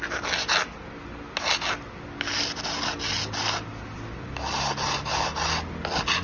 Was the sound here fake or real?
real